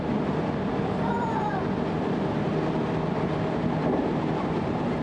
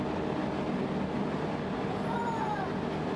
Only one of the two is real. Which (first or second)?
second